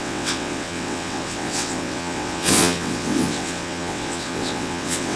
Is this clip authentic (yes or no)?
no